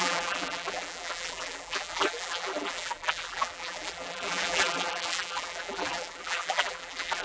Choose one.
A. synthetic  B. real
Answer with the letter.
A